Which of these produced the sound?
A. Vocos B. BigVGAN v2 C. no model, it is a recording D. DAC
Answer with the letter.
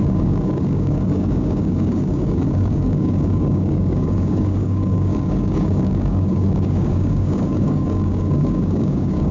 D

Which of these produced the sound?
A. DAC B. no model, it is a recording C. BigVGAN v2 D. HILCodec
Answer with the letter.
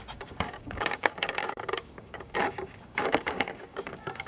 A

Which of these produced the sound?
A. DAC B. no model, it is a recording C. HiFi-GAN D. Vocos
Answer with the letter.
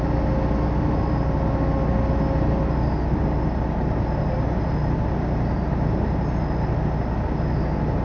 B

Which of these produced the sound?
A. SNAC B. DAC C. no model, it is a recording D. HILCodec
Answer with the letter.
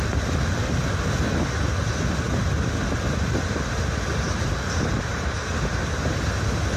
C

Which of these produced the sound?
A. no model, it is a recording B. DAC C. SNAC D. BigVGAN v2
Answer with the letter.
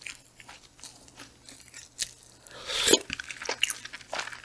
A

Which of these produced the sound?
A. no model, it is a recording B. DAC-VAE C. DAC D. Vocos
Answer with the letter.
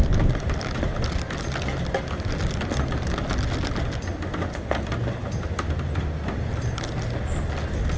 A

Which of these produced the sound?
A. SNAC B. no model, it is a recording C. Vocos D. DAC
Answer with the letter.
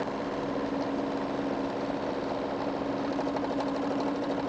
B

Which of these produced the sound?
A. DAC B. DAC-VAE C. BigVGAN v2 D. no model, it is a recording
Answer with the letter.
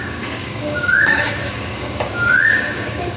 A